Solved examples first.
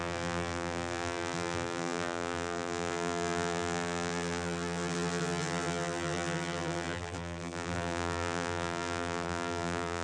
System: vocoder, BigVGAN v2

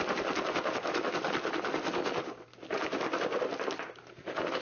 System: none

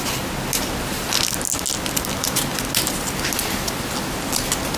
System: none